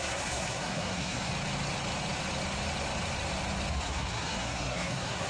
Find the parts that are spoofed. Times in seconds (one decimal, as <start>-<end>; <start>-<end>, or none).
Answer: 0.0-1.3; 3.7-5.3